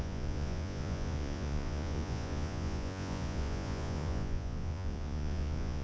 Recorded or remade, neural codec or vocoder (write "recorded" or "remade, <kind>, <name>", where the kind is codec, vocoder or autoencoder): remade, vocoder, Vocos